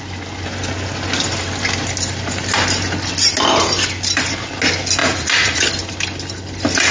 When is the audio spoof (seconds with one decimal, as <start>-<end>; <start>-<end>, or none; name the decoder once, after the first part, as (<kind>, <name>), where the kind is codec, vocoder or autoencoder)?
5.0-5.6 (vocoder, Vocos)